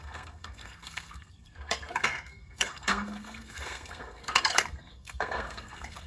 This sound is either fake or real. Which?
fake